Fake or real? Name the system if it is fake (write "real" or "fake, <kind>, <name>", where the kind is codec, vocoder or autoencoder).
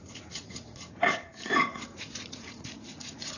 fake, vocoder, Vocos